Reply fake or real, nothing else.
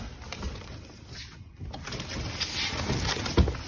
real